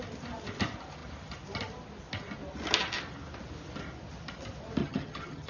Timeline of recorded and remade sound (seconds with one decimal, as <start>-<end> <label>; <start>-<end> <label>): 0.0-4.8 recorded; 4.8-5.5 remade